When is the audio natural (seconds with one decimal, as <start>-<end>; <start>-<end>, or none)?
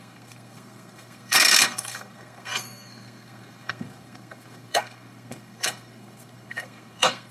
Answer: none